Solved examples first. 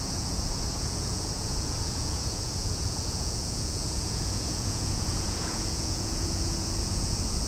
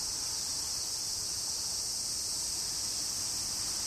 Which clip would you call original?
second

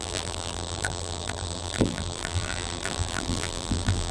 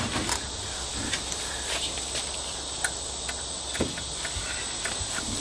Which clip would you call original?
second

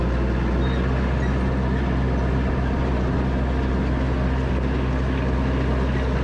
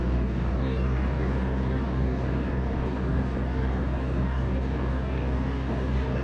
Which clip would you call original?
first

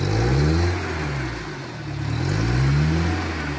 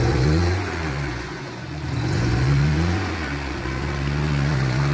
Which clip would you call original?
first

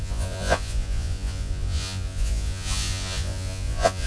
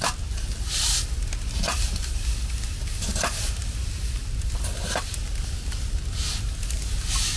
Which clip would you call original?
second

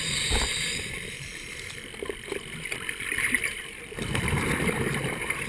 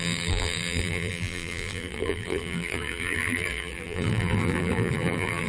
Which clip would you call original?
first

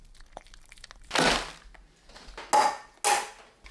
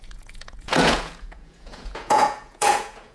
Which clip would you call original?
first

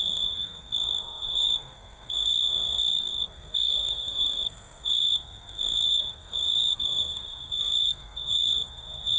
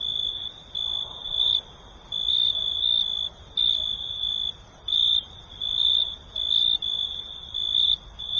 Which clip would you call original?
second